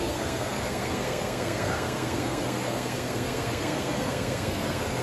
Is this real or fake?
fake